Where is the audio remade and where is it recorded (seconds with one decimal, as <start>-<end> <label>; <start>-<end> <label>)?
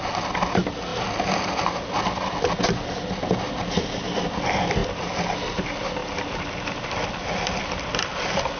0.0-8.6 recorded